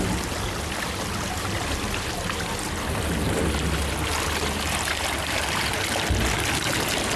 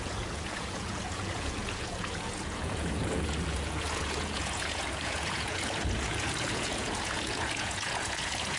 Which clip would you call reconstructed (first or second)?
second